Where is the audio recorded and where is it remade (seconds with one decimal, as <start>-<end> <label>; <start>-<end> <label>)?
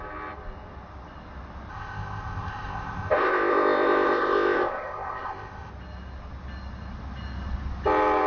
0.0-1.7 recorded; 1.7-5.7 remade; 5.7-8.3 recorded